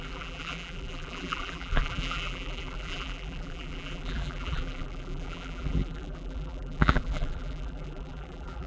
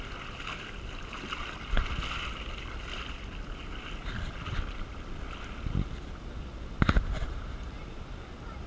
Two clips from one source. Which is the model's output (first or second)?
first